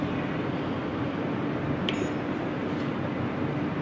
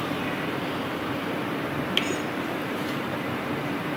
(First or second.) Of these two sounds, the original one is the first